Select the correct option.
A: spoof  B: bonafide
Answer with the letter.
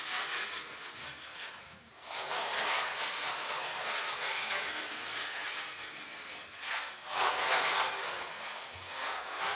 A